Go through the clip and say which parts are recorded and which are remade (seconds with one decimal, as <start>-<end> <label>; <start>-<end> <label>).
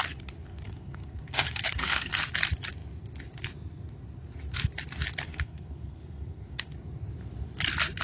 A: 0.0-0.5 recorded; 0.5-2.2 remade; 2.2-5.3 recorded; 5.3-6.7 remade; 6.7-8.0 recorded